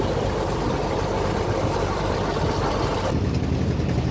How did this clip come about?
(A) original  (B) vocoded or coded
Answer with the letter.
A